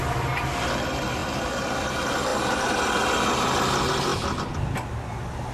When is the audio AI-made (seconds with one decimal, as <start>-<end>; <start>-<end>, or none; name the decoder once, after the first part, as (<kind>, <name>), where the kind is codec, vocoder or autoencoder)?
none